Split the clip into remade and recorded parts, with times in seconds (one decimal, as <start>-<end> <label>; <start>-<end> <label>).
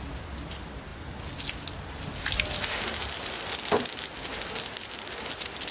0.0-5.7 recorded